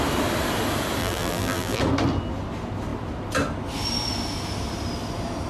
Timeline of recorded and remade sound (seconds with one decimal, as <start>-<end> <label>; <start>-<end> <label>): 0.0-1.0 recorded; 1.0-1.8 remade; 1.8-5.5 recorded